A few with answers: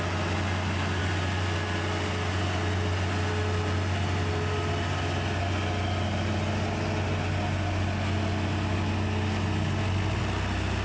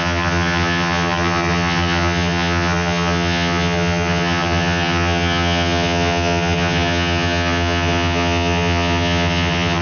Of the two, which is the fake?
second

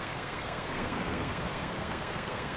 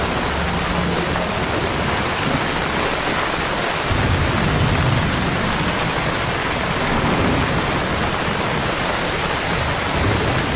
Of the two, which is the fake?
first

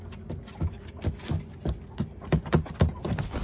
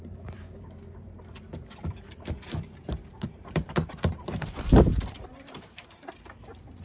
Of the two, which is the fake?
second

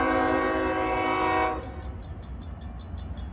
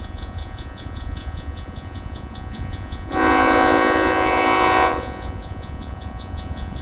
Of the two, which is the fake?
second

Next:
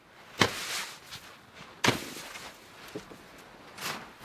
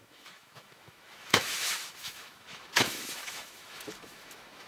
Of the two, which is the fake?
second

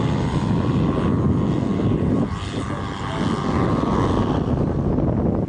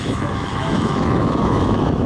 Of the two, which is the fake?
second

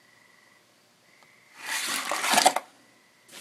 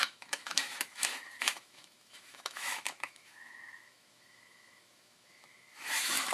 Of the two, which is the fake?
second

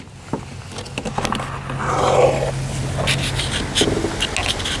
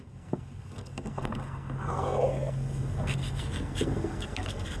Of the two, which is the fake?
second